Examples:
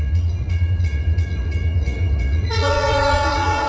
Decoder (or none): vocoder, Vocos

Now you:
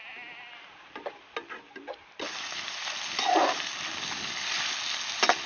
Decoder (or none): none